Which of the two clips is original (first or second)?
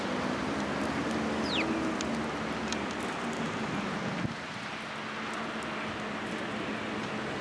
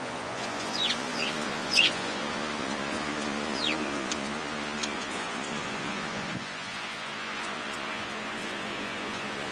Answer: first